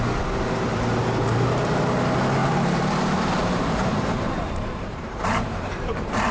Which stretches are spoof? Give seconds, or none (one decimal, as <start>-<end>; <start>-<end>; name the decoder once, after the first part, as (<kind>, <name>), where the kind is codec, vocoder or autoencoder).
0.7-1.8 (vocoder, BigVGAN v2); 2.4-6.3